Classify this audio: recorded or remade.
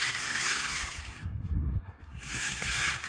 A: remade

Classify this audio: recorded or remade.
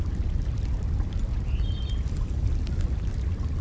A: recorded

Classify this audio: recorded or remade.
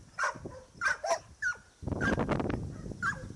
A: recorded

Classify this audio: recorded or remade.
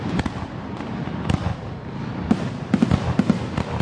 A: recorded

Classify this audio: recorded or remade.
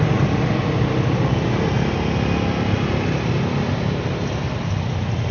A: recorded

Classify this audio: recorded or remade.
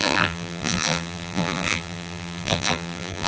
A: remade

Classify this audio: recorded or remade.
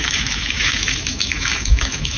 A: remade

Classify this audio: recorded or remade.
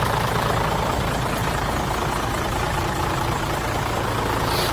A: remade